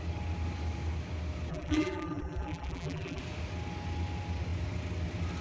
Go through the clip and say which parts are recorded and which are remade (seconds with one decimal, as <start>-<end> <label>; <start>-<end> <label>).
0.0-1.5 recorded; 1.5-3.2 remade; 3.2-5.4 recorded